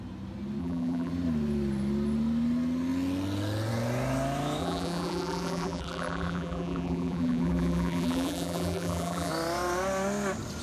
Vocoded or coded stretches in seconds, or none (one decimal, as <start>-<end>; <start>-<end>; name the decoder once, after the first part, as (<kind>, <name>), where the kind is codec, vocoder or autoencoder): 0.6-1.1 (vocoder, BigVGAN v2); 4.6-9.3